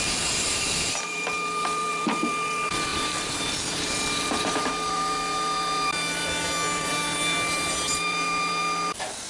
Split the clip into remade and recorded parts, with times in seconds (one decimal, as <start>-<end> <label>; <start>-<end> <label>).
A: 0.0-9.3 remade